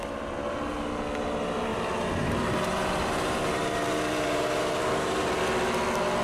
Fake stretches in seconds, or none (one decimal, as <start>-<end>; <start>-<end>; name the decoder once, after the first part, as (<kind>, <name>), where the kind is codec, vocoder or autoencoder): 1.7-5.4 (vocoder, BigVGAN v2)